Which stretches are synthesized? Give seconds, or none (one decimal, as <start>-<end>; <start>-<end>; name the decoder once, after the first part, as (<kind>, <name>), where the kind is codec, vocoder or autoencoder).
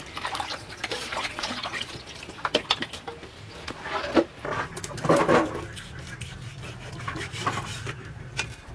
0.5-2.1 (vocoder, Vocos)